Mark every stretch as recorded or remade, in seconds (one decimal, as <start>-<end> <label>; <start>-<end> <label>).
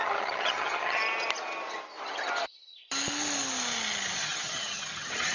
0.0-1.0 remade; 1.0-4.2 recorded; 4.2-5.3 remade